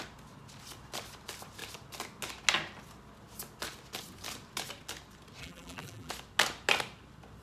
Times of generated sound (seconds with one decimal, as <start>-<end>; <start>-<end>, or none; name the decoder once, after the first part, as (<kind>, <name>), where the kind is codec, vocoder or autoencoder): 5.4-6.1 (vocoder, BigVGAN v2)